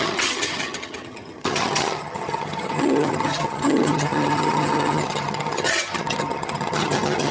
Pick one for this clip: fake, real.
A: fake